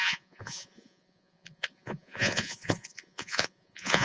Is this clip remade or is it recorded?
remade